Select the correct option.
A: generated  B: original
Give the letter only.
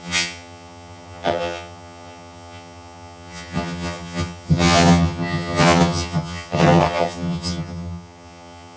A